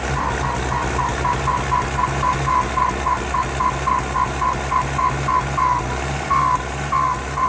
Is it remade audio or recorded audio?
recorded